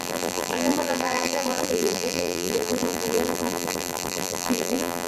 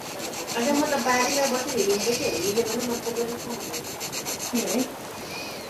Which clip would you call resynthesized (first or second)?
first